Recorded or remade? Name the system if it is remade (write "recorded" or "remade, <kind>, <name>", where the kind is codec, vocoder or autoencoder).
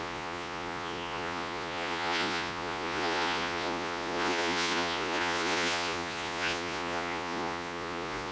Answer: remade, vocoder, Vocos